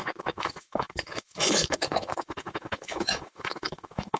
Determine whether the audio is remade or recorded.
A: remade